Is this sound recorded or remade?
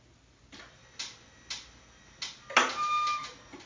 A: recorded